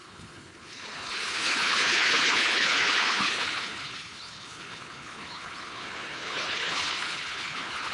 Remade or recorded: remade